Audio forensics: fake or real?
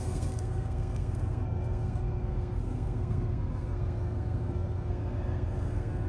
fake